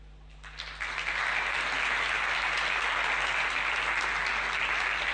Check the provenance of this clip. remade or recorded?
recorded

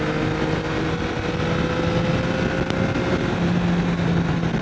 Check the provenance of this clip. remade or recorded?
recorded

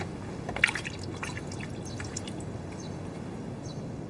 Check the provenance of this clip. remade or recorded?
recorded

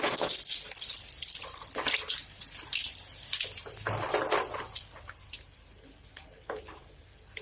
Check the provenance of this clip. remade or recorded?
recorded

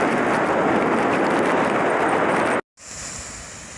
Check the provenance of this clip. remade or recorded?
recorded